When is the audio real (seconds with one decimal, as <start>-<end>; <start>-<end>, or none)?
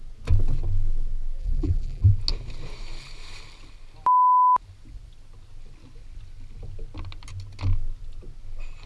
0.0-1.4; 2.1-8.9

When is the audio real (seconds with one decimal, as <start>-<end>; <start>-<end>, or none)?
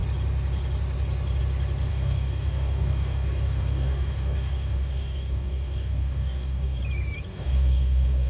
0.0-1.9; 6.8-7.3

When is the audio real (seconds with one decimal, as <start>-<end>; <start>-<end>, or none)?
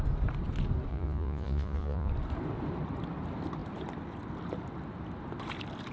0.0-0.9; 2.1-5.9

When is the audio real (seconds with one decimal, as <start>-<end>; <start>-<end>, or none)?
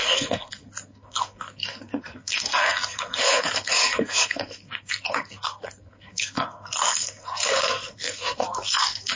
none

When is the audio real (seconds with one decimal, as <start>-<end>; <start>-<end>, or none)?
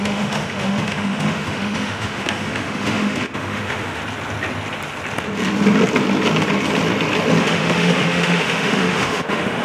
4.0-7.4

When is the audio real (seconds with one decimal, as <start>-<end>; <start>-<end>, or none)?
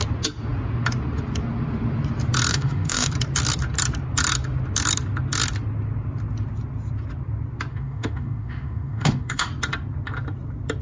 0.0-2.5; 3.1-7.7; 9.5-10.8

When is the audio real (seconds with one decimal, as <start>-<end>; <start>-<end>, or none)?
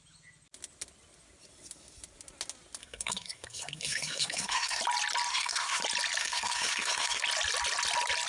0.0-2.8; 4.8-5.3; 5.8-6.2; 7.2-8.3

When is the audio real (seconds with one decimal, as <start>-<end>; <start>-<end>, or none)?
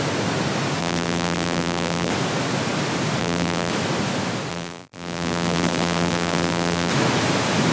0.0-0.8; 2.1-3.2; 3.7-4.5; 6.9-7.7